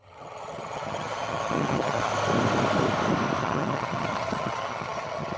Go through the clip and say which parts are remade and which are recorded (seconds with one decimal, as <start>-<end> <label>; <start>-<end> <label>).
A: 0.0-2.1 remade; 2.1-3.4 recorded; 3.4-5.4 remade